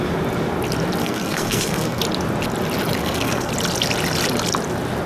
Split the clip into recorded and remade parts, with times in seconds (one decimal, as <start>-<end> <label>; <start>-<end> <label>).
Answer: 0.0-1.0 recorded; 1.0-2.0 remade; 2.0-3.0 recorded; 3.0-3.5 remade; 3.5-5.1 recorded